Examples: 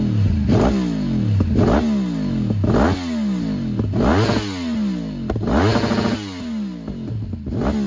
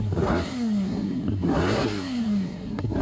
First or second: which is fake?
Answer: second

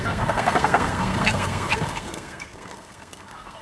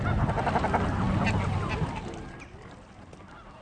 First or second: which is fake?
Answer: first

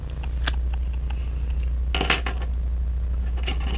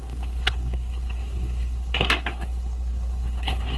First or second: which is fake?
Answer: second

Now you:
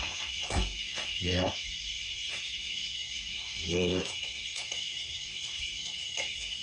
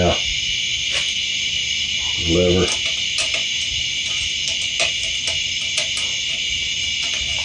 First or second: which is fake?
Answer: first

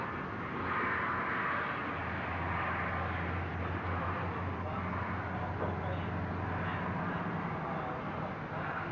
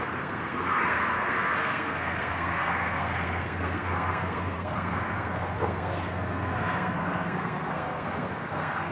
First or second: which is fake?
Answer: second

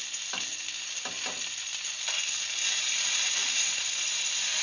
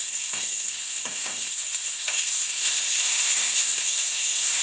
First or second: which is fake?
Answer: second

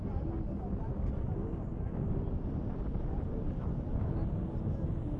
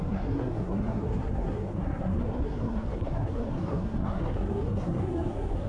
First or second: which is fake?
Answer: second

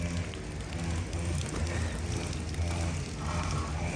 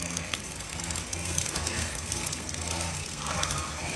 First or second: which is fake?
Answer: second